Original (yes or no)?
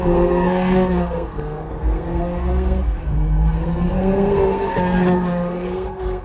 no